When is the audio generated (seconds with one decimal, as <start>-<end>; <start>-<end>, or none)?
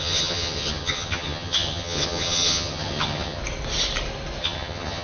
0.0-3.4; 4.4-5.0